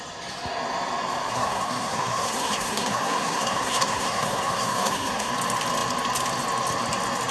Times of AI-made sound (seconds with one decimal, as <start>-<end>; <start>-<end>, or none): 1.3-5.3